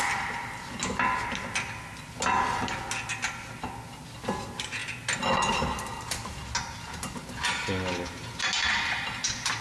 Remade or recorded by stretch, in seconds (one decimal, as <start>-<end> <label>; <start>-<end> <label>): 0.0-9.6 recorded